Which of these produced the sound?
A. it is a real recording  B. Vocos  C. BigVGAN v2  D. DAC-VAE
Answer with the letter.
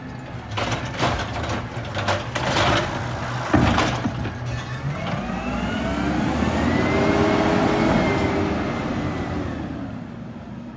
A